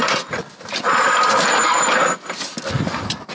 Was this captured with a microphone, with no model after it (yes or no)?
yes